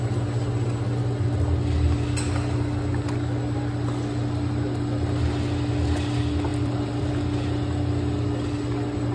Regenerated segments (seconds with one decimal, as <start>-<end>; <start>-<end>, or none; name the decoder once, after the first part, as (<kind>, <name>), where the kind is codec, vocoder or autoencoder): 6.5-7.1 (vocoder, BigVGAN v2)